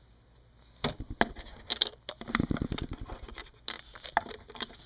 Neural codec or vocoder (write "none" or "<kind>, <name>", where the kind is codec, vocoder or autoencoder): none